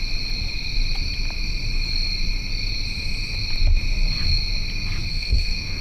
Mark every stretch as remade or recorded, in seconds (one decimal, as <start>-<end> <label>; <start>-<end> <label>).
0.0-5.1 recorded; 5.1-5.8 remade